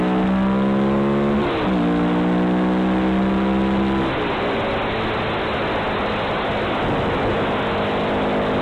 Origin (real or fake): real